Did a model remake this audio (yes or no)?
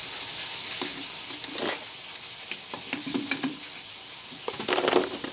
no